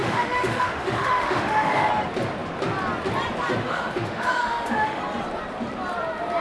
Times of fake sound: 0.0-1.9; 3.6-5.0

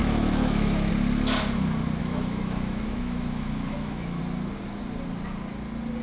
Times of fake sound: 0.0-0.9; 2.0-4.2

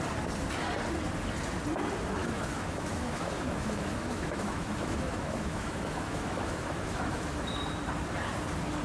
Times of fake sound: 2.2-7.4

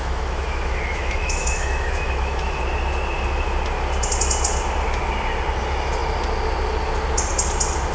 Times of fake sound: 0.0-2.6

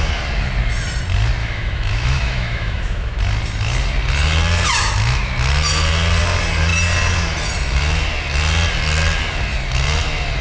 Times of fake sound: 1.4-3.2

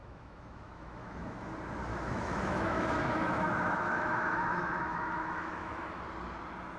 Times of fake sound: 0.0-1.5; 1.9-6.0

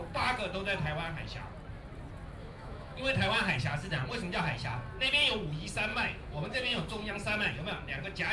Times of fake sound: 2.4-3.0; 5.9-7.1